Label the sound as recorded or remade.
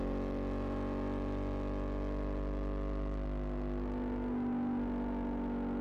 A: recorded